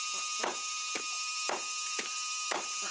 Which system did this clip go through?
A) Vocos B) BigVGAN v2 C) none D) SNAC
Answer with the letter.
B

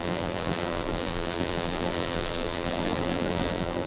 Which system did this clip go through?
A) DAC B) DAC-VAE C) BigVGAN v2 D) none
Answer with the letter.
C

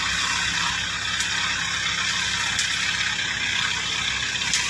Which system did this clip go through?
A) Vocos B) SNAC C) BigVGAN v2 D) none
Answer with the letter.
D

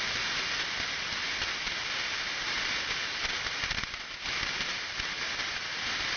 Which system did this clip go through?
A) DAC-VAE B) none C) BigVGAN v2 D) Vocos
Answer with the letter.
B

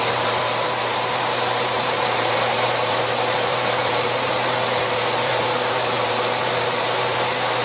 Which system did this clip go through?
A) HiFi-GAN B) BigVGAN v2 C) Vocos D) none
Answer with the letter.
B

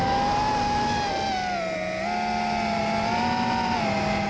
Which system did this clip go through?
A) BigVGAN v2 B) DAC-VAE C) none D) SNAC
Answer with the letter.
C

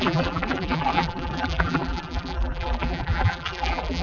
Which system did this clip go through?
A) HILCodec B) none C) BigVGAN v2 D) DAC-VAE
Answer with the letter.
C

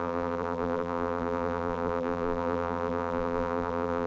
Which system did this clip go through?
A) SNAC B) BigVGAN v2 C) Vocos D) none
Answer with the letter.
B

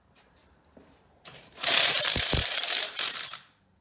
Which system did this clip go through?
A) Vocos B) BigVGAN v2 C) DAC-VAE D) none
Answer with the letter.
B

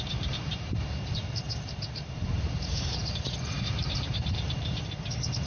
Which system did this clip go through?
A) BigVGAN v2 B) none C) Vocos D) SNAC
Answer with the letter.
A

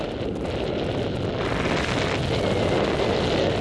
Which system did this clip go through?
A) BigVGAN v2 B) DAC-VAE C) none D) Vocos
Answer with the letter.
C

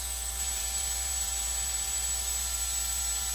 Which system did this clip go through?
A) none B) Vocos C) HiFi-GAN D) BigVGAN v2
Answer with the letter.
D